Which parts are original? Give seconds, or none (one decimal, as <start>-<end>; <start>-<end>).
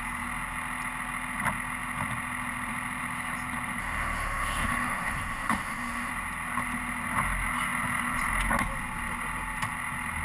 0.0-3.8; 6.1-10.2